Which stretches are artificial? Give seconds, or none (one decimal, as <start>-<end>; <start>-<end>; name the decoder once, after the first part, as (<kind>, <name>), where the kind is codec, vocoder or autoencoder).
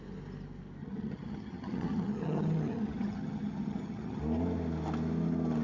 0.8-4.2 (vocoder, HiFi-GAN)